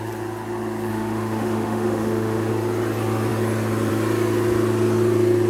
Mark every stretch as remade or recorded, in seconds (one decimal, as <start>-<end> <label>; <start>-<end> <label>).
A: 0.0-0.9 recorded; 0.9-2.5 remade; 2.5-5.5 recorded